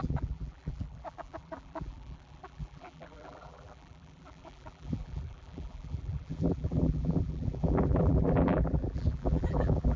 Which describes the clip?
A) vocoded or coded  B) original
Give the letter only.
A